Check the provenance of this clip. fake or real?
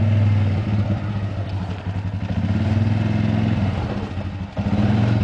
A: real